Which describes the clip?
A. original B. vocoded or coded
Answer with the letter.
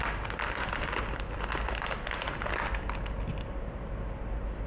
A